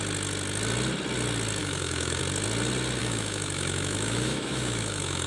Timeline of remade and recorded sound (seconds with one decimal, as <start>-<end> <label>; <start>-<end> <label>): 0.0-1.6 recorded; 1.6-2.2 remade; 2.2-3.0 recorded; 3.0-5.3 remade